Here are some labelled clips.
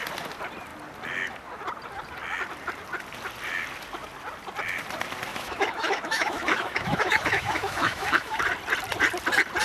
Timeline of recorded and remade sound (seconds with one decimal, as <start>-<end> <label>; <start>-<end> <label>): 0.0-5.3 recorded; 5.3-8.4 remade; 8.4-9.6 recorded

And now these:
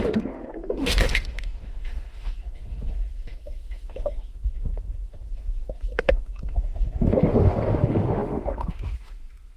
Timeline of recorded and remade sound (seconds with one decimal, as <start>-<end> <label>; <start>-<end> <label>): 0.0-9.6 remade

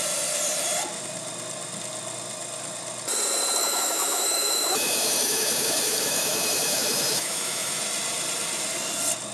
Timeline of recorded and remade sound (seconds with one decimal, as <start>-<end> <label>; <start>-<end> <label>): 0.0-3.6 recorded; 3.6-7.8 remade; 7.8-9.3 recorded